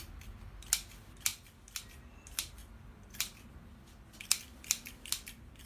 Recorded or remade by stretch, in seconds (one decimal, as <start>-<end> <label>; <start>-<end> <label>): 0.0-5.7 recorded